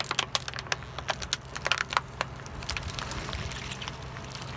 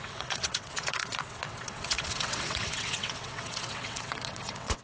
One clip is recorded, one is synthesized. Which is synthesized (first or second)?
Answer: second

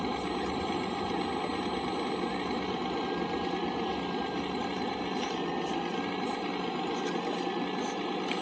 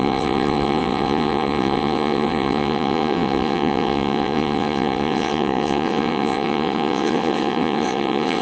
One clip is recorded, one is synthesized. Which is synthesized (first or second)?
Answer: second